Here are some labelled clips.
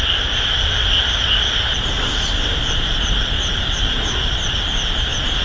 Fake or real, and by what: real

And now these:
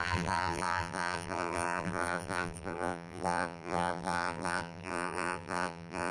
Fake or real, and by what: fake, vocoder, BigVGAN v2